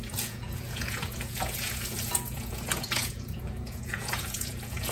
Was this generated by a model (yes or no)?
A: yes